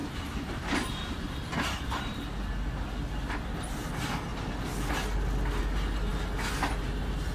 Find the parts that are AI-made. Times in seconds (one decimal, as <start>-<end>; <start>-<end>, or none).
none